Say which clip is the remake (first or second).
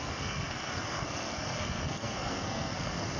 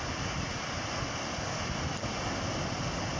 first